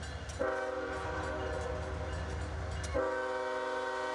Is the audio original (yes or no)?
yes